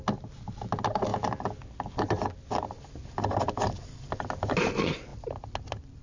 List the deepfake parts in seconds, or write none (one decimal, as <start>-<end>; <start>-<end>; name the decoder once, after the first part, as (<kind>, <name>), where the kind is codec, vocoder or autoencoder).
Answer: none